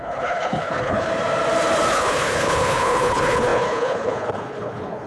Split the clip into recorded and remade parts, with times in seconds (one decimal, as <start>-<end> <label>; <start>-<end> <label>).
0.0-1.1 remade; 1.1-1.9 recorded; 1.9-5.1 remade